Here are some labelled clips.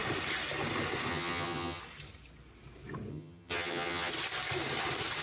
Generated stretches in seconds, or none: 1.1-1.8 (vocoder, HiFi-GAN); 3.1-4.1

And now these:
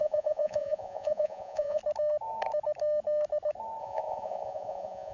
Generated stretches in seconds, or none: 0.0-1.8 (vocoder, Vocos); 3.8-5.1

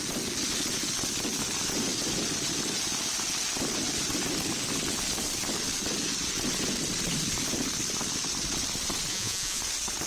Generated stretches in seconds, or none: 9.1-9.6 (vocoder, Vocos)

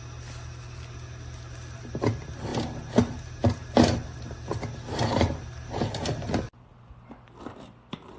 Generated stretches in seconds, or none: none

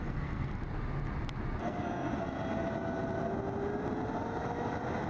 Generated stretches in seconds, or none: 0.0-0.6 (codec, SNAC); 1.6-2.2

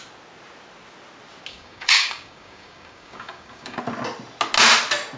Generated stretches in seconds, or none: 1.5-3.8 (codec, DAC)

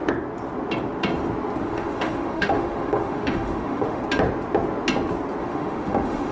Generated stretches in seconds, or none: 1.6-4.0 (autoencoder, DAC-VAE); 5.4-6.3